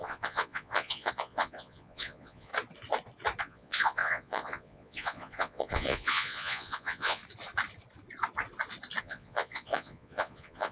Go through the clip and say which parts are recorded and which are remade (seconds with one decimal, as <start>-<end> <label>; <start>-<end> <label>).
0.0-2.5 remade; 2.5-3.4 recorded; 3.4-7.2 remade; 7.2-9.0 recorded; 9.0-10.7 remade